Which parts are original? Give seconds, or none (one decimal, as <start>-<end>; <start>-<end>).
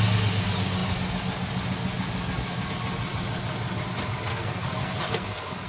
0.0-4.3